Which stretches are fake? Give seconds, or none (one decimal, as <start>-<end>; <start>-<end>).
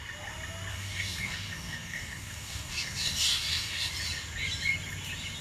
0.7-3.9